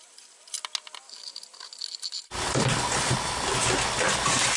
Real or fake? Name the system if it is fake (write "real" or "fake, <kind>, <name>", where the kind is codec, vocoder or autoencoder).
real